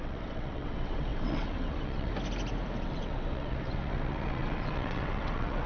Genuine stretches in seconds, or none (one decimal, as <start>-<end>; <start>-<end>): 2.1-2.8